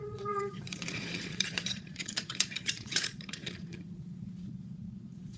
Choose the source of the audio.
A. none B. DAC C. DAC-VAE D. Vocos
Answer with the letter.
D